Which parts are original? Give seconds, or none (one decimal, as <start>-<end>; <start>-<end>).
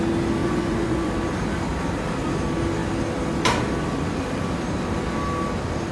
0.0-0.4; 1.1-5.9